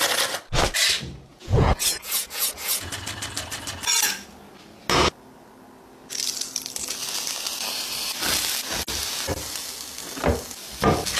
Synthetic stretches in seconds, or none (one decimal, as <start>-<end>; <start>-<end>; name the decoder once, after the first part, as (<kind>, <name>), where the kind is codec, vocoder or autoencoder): 1.3-2.9 (vocoder, Vocos)